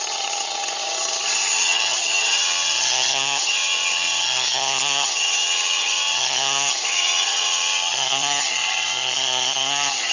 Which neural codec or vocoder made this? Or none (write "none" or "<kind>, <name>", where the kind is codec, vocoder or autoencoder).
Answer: vocoder, HiFi-GAN